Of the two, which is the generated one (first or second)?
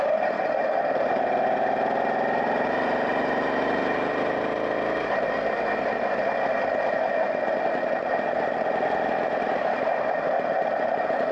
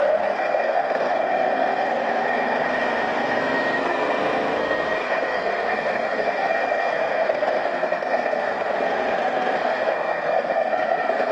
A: second